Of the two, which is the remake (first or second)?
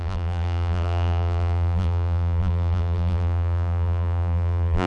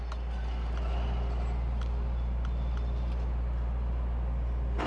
first